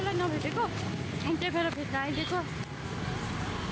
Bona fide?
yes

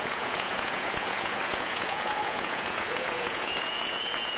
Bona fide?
no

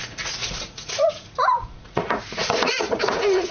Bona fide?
no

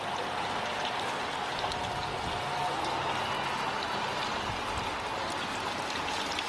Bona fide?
yes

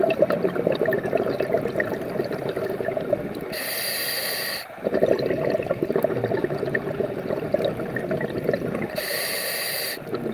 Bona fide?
yes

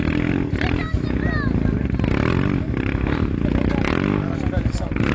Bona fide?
yes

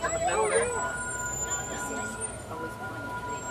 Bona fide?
yes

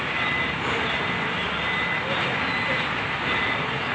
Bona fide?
yes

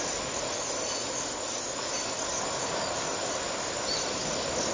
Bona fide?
yes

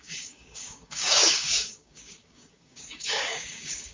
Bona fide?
no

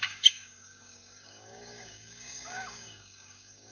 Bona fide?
no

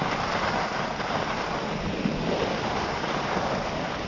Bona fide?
yes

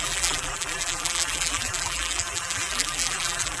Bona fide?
no